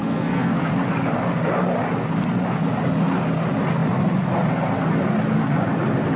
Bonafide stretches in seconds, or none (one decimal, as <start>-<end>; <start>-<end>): 0.7-6.2